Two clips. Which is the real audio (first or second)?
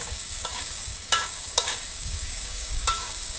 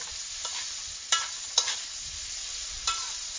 second